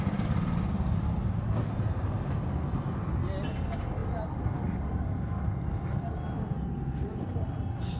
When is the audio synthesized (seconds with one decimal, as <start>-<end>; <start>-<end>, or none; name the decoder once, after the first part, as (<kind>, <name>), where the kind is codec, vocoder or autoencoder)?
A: none